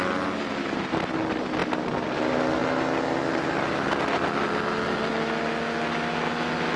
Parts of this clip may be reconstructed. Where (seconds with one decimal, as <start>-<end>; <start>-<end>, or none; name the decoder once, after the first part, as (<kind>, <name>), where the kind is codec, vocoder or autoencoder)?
none